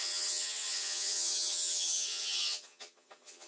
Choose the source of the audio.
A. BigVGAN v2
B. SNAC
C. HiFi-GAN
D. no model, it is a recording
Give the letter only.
C